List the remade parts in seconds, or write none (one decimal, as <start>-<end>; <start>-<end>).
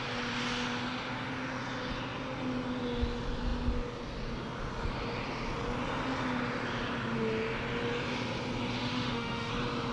8.8-9.5